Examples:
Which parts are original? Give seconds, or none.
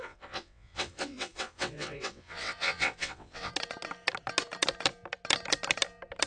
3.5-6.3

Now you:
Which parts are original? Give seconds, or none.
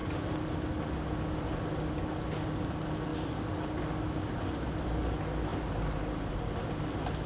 0.0-7.3